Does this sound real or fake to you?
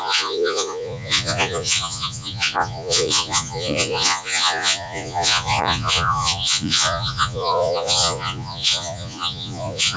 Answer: fake